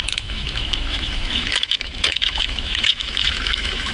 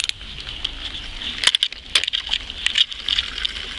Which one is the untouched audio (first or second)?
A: second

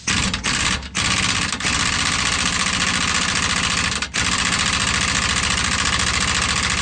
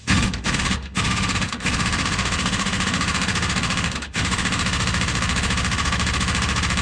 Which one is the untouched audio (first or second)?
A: first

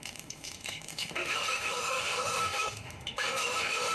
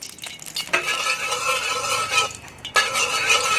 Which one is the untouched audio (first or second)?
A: second